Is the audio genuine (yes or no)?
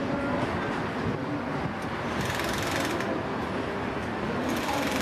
yes